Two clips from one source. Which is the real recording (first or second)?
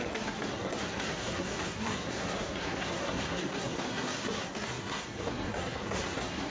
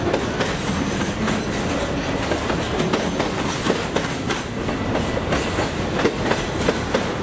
second